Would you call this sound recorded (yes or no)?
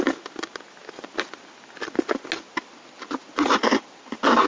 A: yes